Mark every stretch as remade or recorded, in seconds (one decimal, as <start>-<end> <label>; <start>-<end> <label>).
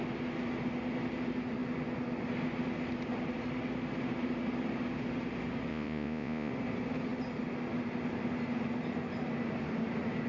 0.0-5.7 recorded; 5.7-6.5 remade; 6.5-10.3 recorded